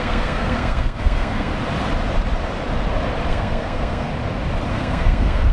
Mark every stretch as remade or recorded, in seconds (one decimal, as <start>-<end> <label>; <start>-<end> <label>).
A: 0.0-1.5 remade; 1.5-3.3 recorded; 3.3-4.1 remade; 4.1-4.7 recorded; 4.7-5.5 remade